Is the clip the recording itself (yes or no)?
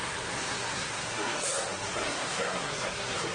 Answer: no